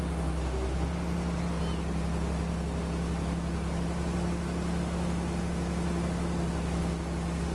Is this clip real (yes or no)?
yes